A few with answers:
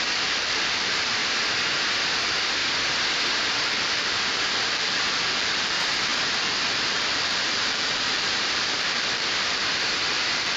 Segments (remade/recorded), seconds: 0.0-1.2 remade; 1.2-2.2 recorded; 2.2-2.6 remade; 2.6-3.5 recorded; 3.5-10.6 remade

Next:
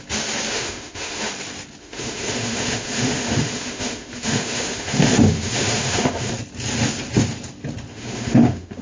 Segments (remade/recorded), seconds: 0.0-0.5 recorded; 0.5-1.3 remade; 1.3-1.8 recorded; 1.8-6.3 remade; 6.3-7.9 recorded; 7.9-8.8 remade

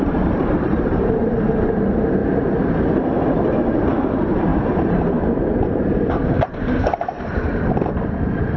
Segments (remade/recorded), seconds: 0.0-2.2 remade; 2.2-3.6 recorded; 3.6-8.6 remade